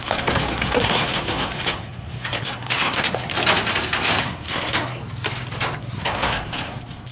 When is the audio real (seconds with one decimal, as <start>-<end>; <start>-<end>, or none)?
3.3-4.2; 5.0-5.8